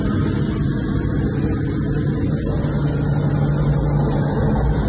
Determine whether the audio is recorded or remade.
recorded